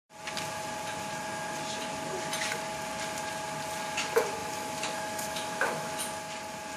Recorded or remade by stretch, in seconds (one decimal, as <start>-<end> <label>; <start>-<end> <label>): 0.0-4.4 recorded; 4.4-6.0 remade; 6.0-6.8 recorded